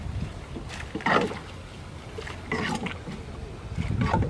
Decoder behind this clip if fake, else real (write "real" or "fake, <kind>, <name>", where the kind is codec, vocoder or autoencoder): real